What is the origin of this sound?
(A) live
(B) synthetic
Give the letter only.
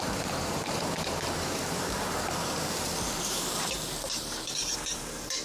B